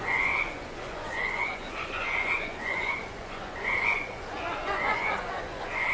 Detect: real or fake fake